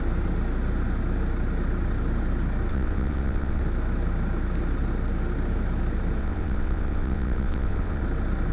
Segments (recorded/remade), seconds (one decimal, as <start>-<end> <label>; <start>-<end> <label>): 0.0-2.7 recorded; 2.7-3.6 remade; 3.6-6.2 recorded; 6.2-8.0 remade; 8.0-8.5 recorded